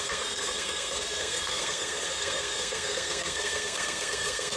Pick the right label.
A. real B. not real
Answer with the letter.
B